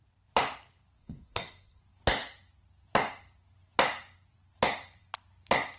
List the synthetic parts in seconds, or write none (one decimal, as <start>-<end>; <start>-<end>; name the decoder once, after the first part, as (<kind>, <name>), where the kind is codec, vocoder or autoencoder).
1.0-1.8 (codec, SNAC)